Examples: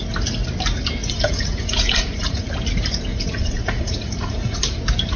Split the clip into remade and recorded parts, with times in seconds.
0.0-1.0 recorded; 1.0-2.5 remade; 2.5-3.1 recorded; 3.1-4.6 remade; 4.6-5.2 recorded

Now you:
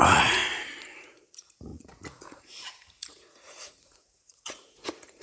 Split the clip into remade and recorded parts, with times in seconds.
0.0-0.4 remade; 0.4-1.0 recorded; 1.0-5.2 remade